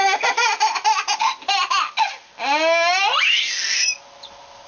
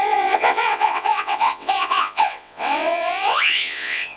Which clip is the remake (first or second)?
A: second